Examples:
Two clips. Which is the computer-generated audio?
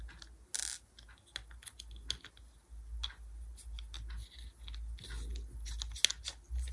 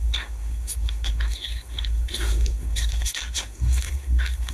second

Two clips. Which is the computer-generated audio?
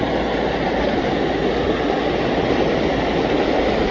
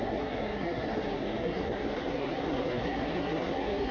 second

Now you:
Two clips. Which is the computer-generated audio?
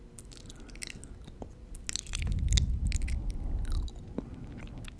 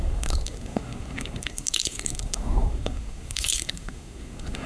second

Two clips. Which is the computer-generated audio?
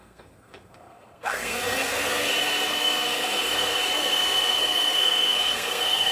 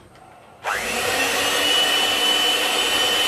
first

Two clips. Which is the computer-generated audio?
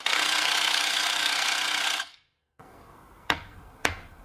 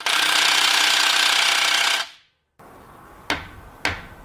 first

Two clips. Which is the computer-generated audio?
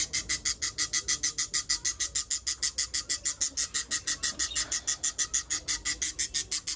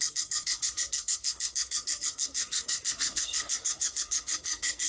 second